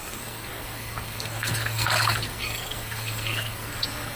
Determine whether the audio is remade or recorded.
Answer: remade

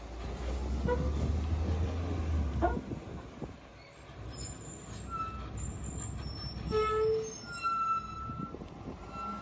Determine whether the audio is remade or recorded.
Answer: recorded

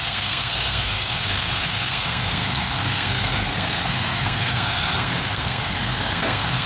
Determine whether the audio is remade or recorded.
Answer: remade